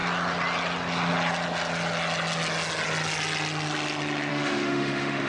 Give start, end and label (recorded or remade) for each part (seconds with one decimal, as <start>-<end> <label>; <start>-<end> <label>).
0.0-4.3 recorded; 4.3-5.3 remade